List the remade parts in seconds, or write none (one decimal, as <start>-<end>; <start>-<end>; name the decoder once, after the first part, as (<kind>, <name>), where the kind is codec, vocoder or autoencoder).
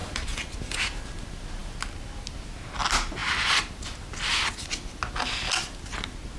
none